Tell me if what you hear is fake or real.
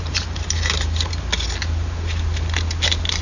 real